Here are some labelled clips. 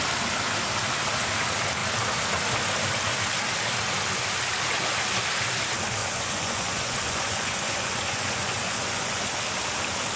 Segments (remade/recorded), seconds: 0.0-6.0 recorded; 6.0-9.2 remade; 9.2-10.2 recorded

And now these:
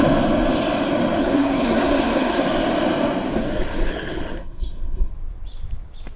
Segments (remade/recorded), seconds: 0.0-1.2 recorded; 1.2-2.4 remade; 2.4-3.3 recorded; 3.3-5.1 remade; 5.1-6.2 recorded

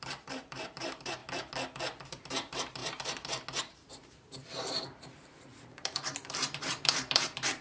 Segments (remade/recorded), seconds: 0.0-1.2 remade; 1.2-2.1 recorded; 2.1-2.8 remade; 2.8-3.6 recorded; 3.6-7.6 remade

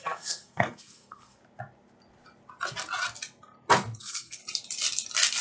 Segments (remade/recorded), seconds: 0.0-1.4 remade; 1.4-4.0 recorded; 4.0-4.4 remade; 4.4-5.4 recorded